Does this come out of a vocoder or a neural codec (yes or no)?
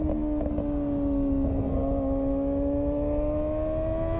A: no